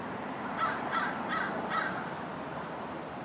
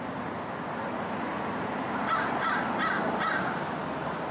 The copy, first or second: first